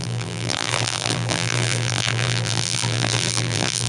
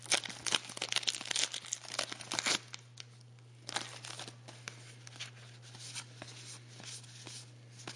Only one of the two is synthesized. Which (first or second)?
first